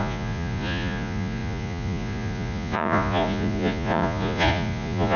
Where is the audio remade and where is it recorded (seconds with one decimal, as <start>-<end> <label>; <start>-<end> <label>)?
0.0-5.2 remade